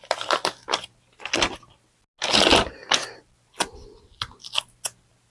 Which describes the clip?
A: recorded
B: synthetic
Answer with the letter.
A